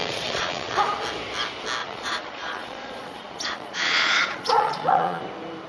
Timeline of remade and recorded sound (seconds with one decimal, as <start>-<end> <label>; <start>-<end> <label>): 0.0-0.8 remade; 0.8-1.8 recorded; 1.8-5.2 remade; 5.2-5.7 recorded